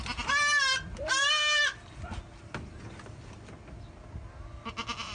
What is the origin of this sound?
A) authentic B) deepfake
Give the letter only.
A